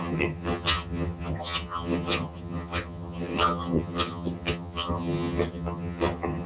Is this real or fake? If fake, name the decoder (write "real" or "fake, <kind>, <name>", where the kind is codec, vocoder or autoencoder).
fake, vocoder, HiFi-GAN